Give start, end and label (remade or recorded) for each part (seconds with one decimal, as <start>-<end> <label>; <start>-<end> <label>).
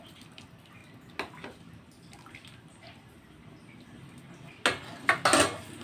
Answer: 0.0-5.8 recorded